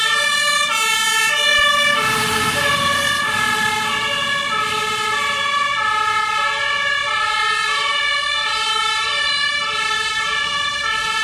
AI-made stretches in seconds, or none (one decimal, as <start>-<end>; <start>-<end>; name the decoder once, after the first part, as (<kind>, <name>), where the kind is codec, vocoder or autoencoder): 1.5-5.7 (vocoder, BigVGAN v2); 7.0-10.1